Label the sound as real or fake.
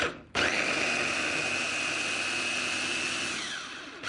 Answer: real